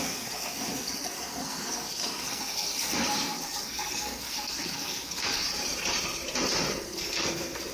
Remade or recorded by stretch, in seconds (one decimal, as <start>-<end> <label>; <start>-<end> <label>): 0.0-5.4 remade; 5.4-6.7 recorded; 6.7-7.7 remade